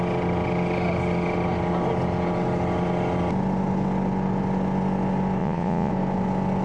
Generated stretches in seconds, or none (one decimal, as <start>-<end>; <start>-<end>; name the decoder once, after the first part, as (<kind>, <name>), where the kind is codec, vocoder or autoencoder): 5.4-5.9 (vocoder, Vocos)